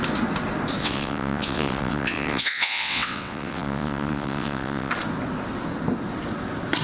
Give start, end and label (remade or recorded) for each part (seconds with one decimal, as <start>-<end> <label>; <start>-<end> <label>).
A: 0.0-0.8 recorded; 0.8-4.9 remade; 4.9-6.8 recorded